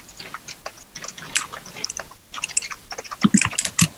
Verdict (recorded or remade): recorded